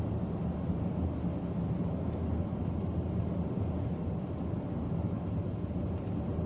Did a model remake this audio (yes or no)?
no